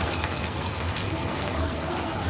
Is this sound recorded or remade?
remade